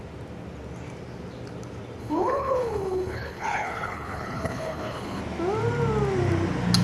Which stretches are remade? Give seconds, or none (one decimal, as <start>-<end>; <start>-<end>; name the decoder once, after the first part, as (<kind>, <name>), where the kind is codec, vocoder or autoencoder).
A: 2.0-5.2 (codec, HILCodec)